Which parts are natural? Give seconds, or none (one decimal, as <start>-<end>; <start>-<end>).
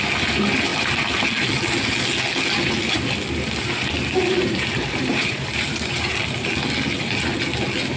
0.0-4.4; 6.1-8.0